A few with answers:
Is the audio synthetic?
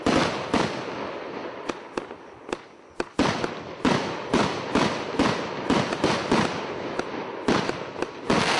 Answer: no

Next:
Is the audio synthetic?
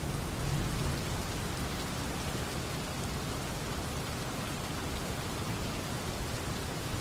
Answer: no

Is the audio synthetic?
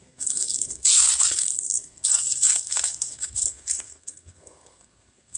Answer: yes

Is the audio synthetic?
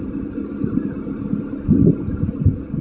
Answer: no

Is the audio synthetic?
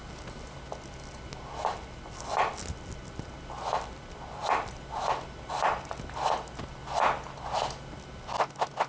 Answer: no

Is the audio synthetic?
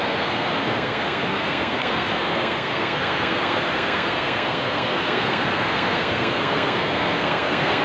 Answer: yes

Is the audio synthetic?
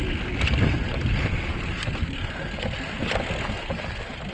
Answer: no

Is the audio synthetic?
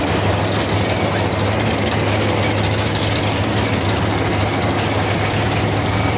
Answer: no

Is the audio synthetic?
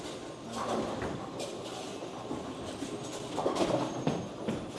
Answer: no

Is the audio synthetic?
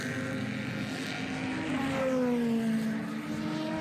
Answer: no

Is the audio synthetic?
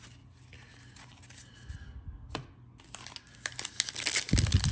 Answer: no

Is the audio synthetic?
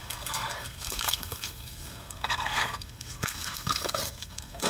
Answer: yes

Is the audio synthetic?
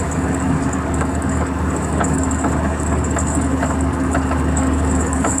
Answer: yes